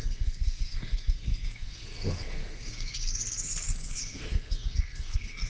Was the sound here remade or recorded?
remade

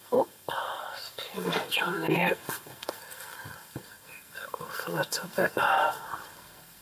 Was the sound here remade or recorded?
remade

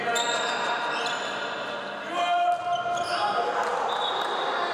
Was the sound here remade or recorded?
recorded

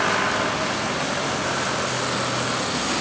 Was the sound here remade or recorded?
recorded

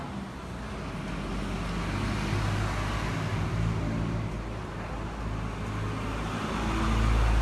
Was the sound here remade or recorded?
recorded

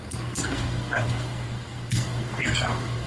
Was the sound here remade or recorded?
remade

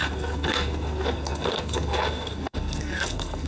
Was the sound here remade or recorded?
remade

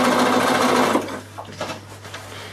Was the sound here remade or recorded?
recorded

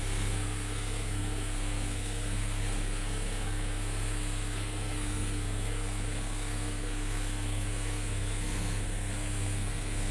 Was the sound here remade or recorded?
remade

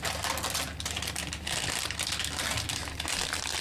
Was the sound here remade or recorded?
recorded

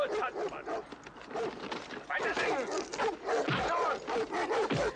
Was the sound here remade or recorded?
recorded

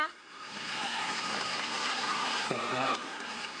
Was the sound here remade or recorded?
remade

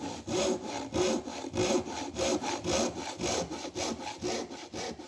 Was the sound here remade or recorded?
recorded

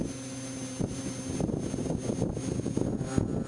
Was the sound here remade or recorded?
recorded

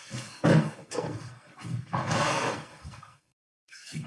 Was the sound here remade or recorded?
remade